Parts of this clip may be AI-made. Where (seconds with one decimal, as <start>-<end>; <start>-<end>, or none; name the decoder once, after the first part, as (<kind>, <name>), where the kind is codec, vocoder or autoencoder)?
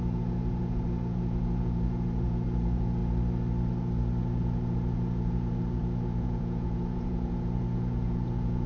0.0-3.0 (vocoder, Vocos); 4.2-8.7